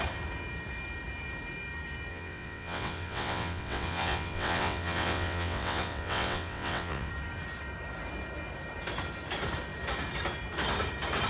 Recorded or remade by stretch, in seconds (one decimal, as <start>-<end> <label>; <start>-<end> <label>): 0.0-2.1 recorded; 2.1-7.1 remade; 7.1-11.3 recorded